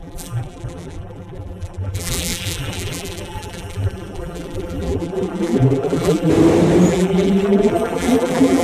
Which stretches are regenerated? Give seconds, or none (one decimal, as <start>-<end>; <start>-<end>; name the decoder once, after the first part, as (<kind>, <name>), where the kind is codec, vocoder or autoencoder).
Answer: 0.0-6.3 (vocoder, BigVGAN v2); 6.9-8.6